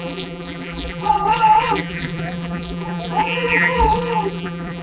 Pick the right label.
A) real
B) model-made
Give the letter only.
B